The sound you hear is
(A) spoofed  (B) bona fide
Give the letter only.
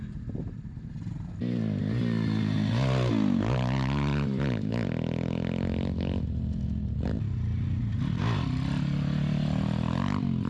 B